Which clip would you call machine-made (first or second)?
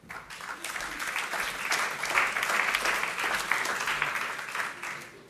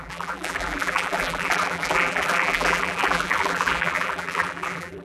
second